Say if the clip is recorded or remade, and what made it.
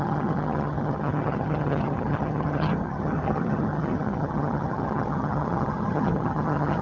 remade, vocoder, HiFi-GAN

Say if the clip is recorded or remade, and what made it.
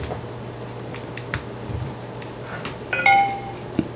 recorded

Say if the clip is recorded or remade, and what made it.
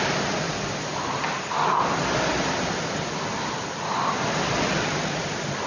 recorded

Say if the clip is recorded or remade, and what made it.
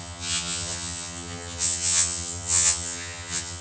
remade, vocoder, HiFi-GAN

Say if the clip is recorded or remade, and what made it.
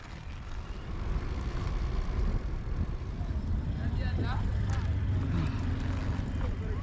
recorded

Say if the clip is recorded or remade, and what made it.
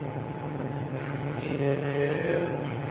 remade, vocoder, HiFi-GAN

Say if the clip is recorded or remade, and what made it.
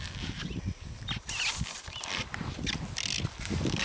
recorded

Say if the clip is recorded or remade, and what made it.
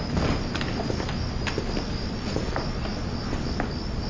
recorded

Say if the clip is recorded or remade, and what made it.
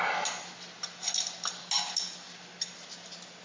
recorded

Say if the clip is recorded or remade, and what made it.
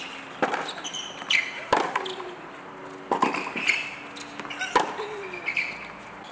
recorded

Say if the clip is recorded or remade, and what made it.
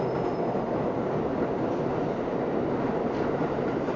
recorded